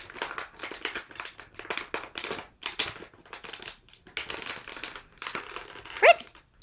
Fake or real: real